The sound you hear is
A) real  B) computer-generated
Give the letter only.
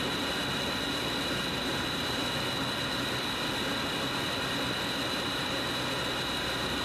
A